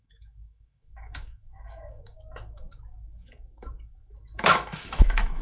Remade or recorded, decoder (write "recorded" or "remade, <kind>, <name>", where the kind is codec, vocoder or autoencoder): remade, autoencoder, DAC-VAE